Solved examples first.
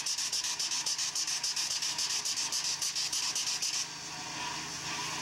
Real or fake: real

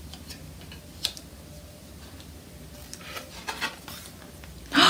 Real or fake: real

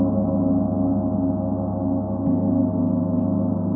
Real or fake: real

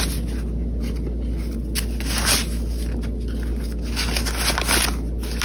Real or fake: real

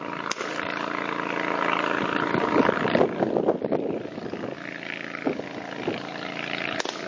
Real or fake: real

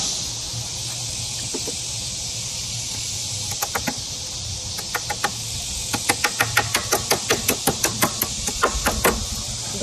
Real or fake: real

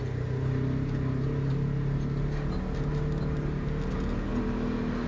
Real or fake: real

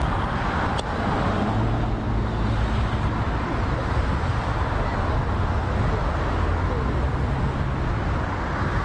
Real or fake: real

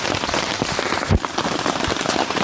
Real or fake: fake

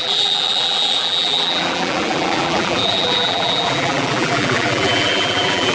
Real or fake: fake